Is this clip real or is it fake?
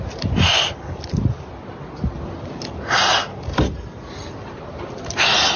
real